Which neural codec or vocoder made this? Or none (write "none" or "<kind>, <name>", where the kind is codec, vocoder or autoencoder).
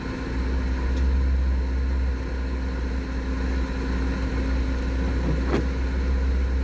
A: none